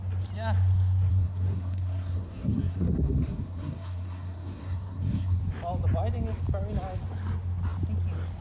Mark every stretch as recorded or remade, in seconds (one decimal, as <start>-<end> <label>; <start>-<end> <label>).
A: 0.0-1.1 recorded; 1.1-5.4 remade; 5.4-8.4 recorded